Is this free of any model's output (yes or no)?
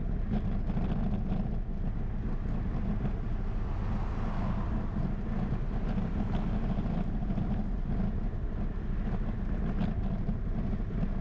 yes